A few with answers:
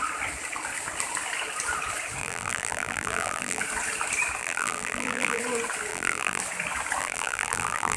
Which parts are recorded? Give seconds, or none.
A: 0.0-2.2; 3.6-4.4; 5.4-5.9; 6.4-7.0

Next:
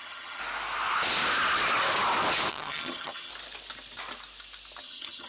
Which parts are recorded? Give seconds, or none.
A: 0.4-2.5; 3.3-4.8